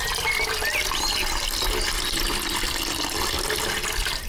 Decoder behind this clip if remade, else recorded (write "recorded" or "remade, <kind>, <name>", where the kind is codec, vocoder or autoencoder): recorded